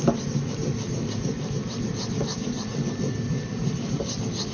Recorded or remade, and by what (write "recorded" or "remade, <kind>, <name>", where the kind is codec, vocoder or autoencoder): recorded